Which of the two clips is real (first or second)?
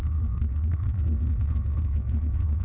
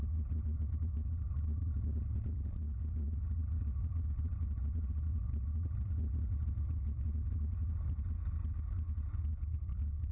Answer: second